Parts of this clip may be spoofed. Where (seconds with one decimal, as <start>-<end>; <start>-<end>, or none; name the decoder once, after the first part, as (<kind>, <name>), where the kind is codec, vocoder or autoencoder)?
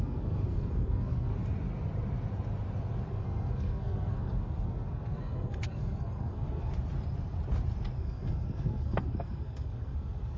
0.0-1.3 (codec, SNAC); 3.1-6.7; 8.0-10.4